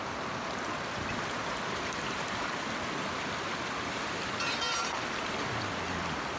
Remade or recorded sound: remade